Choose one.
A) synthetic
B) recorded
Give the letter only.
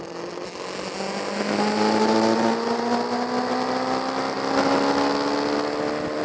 B